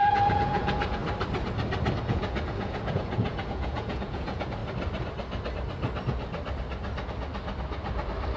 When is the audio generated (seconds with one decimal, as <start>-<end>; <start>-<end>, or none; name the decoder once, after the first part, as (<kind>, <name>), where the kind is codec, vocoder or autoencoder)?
0.0-1.0 (vocoder, Vocos); 2.0-4.6